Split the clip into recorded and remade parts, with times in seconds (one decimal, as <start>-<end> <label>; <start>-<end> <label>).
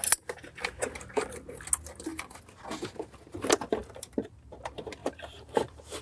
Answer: 0.0-2.1 recorded; 2.1-2.6 remade; 2.6-3.8 recorded; 3.8-4.6 remade; 4.6-5.0 recorded; 5.0-6.0 remade